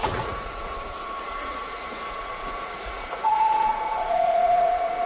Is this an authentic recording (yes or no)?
no